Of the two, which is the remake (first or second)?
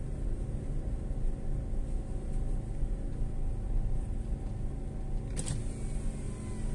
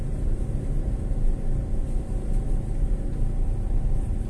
second